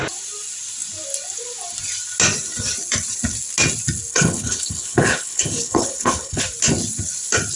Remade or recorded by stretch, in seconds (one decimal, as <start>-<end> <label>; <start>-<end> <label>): 0.0-4.1 recorded; 4.1-6.4 remade; 6.4-7.6 recorded